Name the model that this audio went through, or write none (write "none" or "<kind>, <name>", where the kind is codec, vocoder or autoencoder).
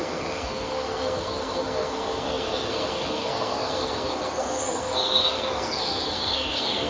codec, SNAC